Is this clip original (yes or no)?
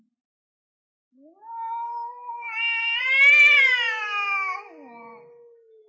yes